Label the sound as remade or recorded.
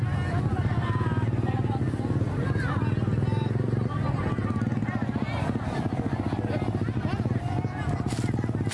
recorded